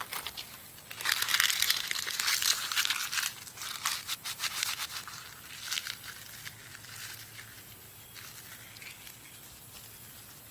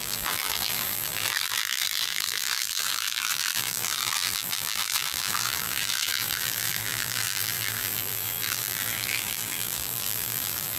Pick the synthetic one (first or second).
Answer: second